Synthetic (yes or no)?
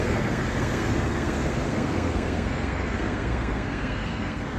yes